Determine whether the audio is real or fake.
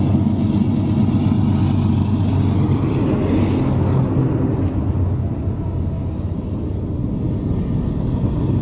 real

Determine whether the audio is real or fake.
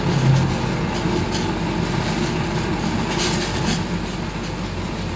real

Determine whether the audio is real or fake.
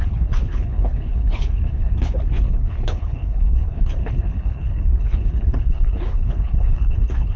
fake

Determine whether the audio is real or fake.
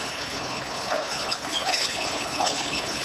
fake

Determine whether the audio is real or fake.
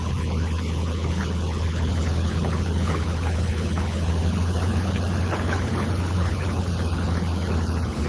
fake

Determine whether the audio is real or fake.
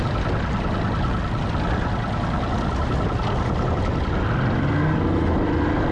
real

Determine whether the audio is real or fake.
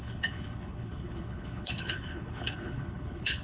fake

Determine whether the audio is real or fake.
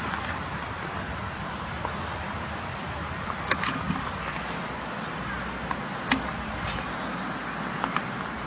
real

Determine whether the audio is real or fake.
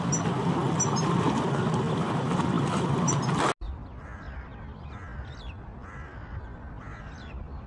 real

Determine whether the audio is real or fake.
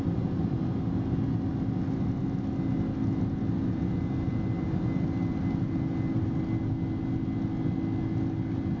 real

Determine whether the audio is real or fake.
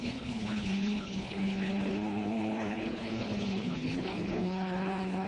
fake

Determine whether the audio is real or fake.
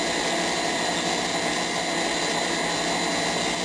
real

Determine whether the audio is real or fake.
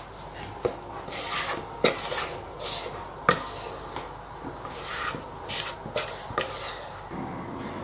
real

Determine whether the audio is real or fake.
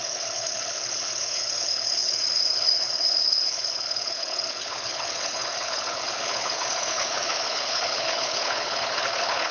fake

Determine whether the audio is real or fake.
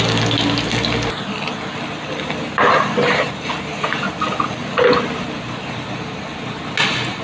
real